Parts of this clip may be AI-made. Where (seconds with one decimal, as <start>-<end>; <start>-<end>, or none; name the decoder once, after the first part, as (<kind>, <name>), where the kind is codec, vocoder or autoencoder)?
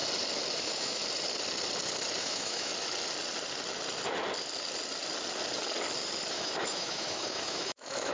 0.6-1.0 (autoencoder, DAC-VAE); 2.2-2.7; 6.3-8.1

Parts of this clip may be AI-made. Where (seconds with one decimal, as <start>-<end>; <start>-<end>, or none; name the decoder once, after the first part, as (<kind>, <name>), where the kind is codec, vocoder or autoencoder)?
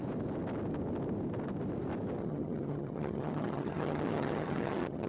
2.2-5.1 (vocoder, HiFi-GAN)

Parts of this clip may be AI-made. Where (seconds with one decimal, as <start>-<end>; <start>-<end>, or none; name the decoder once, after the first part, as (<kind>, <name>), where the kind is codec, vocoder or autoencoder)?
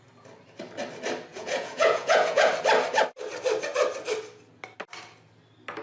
1.3-2.5 (vocoder, Vocos)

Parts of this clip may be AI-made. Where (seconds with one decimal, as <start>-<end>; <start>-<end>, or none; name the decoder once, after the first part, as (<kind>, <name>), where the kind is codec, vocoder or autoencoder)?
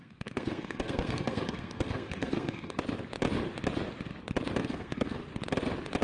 0.0-2.8 (codec, SNAC); 4.6-5.2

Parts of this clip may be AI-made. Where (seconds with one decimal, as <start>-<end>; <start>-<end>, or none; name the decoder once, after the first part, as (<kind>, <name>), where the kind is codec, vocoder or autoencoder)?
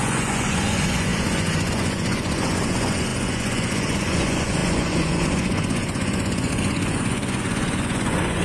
0.0-8.4 (vocoder, Vocos)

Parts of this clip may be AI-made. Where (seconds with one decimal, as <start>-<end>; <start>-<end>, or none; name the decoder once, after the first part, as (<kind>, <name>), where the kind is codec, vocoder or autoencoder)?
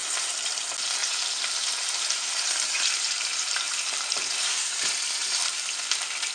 0.0-0.5 (vocoder, BigVGAN v2); 1.0-4.8; 5.2-5.8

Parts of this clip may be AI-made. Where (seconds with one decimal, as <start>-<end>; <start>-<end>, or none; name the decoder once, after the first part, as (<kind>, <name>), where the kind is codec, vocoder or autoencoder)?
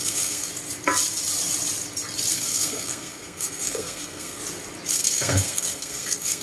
0.0-0.5 (codec, SNAC); 2.3-4.4; 4.9-6.4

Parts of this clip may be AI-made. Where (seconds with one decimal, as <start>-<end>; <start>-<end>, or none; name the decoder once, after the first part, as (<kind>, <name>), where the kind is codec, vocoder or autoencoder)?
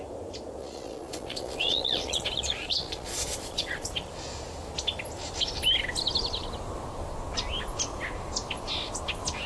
0.6-4.1 (vocoder, Vocos)